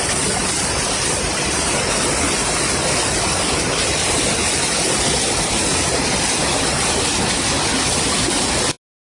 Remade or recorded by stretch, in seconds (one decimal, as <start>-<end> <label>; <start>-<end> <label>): 0.0-9.0 recorded